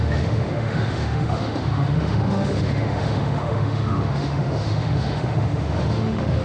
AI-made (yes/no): yes